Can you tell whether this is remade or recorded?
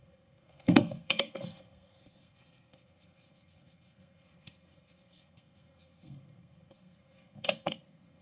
remade